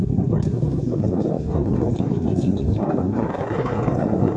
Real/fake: fake